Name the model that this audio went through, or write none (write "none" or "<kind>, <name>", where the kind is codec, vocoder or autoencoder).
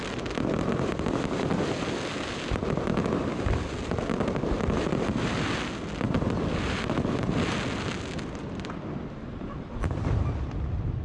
none